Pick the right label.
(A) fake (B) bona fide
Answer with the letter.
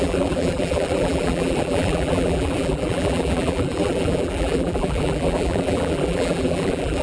A